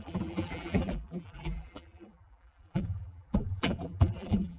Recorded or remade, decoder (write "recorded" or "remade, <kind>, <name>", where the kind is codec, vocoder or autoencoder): remade, vocoder, BigVGAN v2